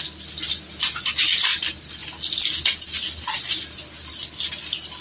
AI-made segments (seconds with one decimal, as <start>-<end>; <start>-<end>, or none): none